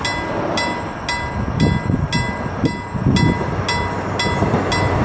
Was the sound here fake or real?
real